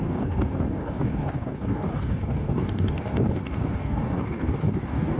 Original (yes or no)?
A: no